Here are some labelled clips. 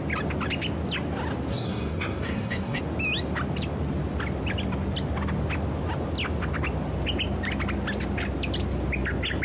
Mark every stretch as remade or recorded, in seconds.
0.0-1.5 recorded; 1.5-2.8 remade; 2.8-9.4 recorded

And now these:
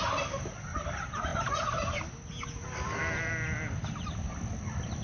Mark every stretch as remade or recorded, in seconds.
0.0-5.0 recorded

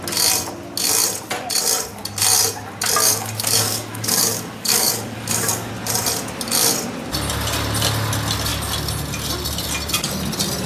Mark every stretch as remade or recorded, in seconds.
0.0-3.0 recorded; 3.0-5.7 remade; 5.7-10.7 recorded

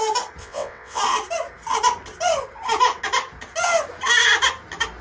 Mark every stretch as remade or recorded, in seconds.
0.0-0.4 recorded; 0.4-1.0 remade; 1.0-5.0 recorded

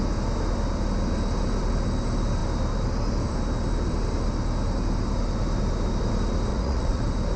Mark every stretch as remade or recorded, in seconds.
0.0-6.5 recorded; 6.5-7.0 remade; 7.0-7.4 recorded

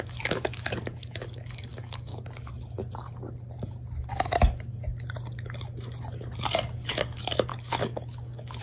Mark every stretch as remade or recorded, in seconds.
0.0-2.1 remade; 2.1-6.9 recorded; 6.9-8.6 remade